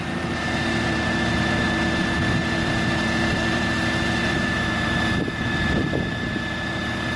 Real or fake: fake